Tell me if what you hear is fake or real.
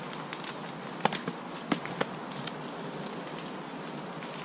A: real